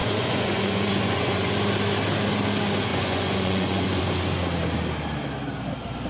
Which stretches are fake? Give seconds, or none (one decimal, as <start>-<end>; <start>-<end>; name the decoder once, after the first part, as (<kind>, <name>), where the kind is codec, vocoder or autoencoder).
0.0-1.5 (vocoder, Vocos); 2.9-4.0